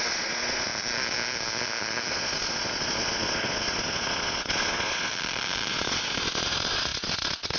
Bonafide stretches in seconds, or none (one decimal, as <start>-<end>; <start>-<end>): 0.7-2.1; 5.1-5.7

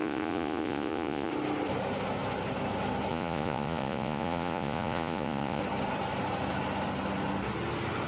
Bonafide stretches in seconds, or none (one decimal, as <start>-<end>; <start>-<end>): 1.3-3.1; 5.6-8.1

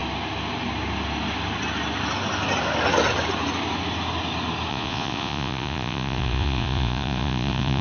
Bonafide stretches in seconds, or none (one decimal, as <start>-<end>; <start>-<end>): 0.0-4.7

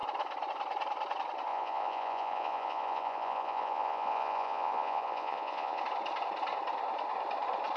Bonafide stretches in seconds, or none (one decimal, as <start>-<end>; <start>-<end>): 0.0-1.5; 5.8-7.8

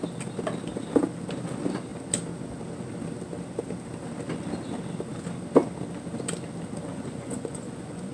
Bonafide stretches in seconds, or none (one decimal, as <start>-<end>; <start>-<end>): 0.0-6.9

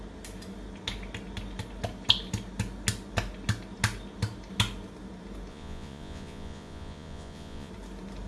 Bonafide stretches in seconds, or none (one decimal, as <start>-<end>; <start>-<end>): 0.0-5.5; 7.7-8.3

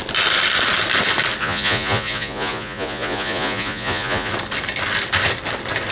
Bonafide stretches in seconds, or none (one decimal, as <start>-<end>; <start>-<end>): 0.0-1.4; 4.3-5.9

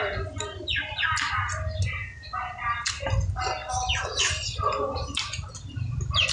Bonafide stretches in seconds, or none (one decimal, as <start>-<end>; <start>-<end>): 0.0-2.0; 2.5-6.3